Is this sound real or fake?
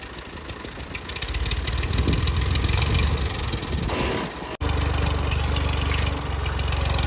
real